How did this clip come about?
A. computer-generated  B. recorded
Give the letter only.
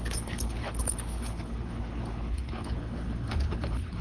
A